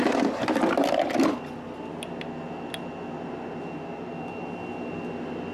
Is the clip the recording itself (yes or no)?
yes